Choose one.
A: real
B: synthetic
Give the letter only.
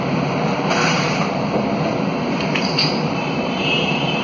B